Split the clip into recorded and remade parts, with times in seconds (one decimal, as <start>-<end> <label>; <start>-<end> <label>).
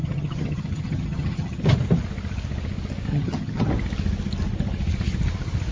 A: 0.0-1.6 remade; 1.6-3.1 recorded; 3.1-3.7 remade; 3.7-5.7 recorded